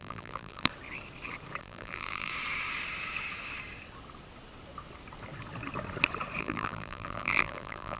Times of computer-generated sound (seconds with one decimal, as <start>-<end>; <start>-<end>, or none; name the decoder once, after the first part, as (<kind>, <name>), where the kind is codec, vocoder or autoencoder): 0.0-0.7 (vocoder, BigVGAN v2); 1.6-2.3; 6.4-8.0